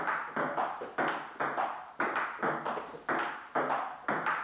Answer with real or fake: real